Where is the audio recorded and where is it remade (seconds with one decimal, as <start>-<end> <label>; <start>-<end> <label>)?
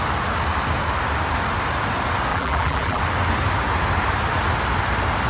0.0-2.3 recorded; 2.3-3.0 remade; 3.0-5.3 recorded